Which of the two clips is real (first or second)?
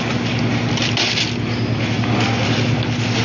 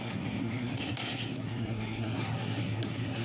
first